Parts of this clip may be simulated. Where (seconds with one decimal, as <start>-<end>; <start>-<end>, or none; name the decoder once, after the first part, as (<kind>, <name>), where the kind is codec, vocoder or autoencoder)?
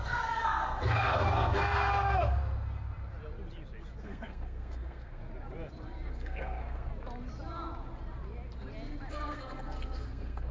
0.0-2.4 (codec, SNAC); 4.0-5.2; 6.1-6.9; 9.1-10.5